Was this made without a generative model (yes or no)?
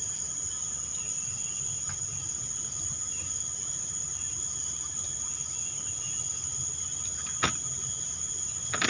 yes